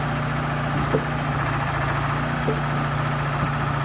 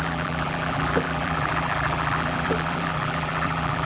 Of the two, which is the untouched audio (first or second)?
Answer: first